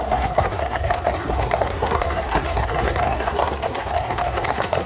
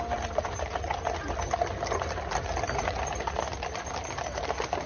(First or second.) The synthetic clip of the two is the first